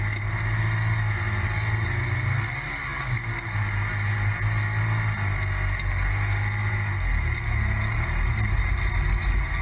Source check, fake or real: real